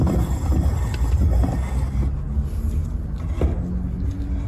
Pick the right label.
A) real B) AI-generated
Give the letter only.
A